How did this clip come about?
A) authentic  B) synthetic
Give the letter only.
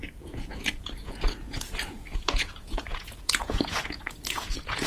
B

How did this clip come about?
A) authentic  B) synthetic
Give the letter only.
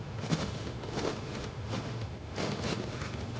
B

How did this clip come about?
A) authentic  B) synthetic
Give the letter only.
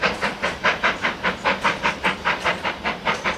A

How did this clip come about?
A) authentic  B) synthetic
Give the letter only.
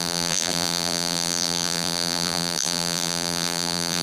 B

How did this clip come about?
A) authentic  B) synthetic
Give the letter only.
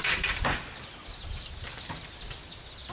A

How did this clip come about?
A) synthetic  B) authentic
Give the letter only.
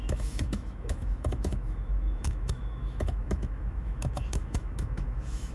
A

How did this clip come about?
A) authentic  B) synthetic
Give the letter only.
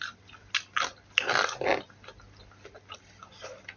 A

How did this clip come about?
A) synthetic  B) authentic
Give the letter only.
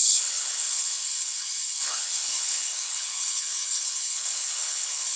A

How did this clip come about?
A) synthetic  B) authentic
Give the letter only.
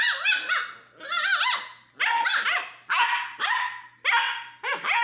B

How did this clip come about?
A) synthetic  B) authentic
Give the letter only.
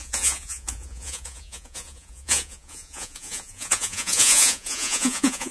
A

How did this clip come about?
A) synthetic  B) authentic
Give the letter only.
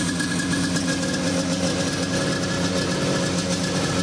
B